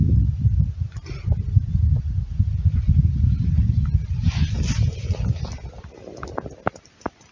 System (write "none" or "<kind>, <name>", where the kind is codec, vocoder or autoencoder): none